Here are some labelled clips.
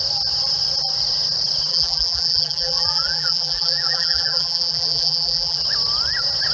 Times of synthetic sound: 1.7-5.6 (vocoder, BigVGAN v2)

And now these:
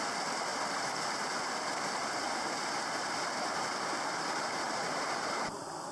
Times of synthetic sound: none

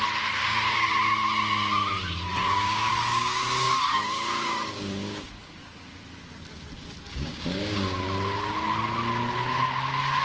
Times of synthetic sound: 0.4-0.9 (codec, DAC); 2.4-5.3; 7.1-8.0

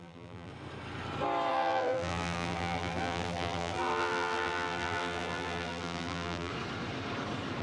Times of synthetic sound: 0.0-0.5 (vocoder, BigVGAN v2); 1.5-6.5

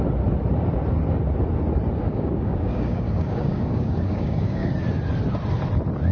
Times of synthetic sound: 2.0-4.7 (codec, DAC)

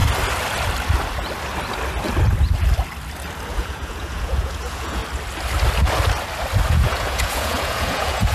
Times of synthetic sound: 3.5-5.0 (vocoder, Vocos); 6.7-8.3